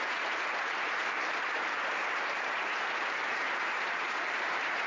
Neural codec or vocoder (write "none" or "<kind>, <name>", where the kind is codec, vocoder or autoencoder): vocoder, BigVGAN v2